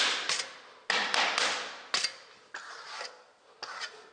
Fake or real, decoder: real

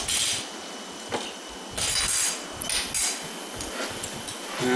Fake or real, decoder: real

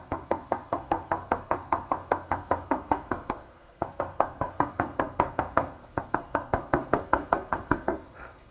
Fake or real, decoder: fake, codec, SNAC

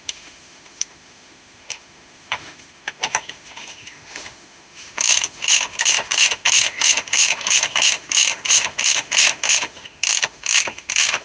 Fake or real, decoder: fake, autoencoder, DAC-VAE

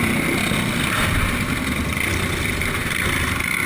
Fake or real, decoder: real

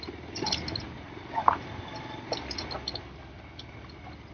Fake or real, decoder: real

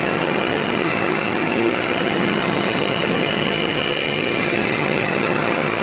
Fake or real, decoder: fake, vocoder, HiFi-GAN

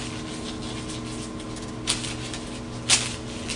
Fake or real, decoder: real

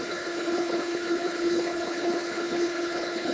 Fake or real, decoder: fake, codec, HILCodec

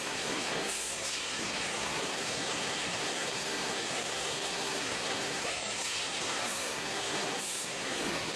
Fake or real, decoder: fake, codec, SNAC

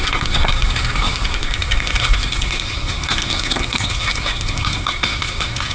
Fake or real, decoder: fake, codec, SNAC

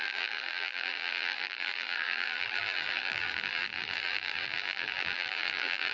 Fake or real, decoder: fake, vocoder, BigVGAN v2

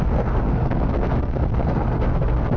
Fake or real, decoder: fake, codec, SNAC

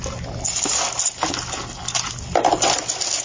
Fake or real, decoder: real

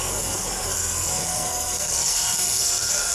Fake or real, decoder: fake, codec, SNAC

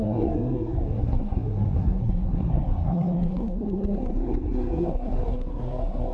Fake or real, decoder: fake, codec, SNAC